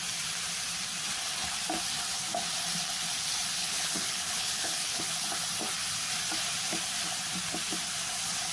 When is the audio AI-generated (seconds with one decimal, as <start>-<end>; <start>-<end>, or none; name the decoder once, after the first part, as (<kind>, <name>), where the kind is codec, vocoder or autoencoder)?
3.6-5.0 (codec, HILCodec)